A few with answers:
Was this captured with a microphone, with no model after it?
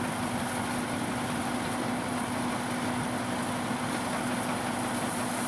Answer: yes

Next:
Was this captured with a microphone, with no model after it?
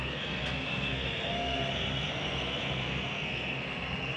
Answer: no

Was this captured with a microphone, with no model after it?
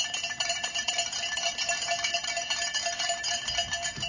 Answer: yes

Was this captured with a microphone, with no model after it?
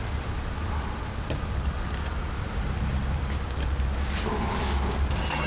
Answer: yes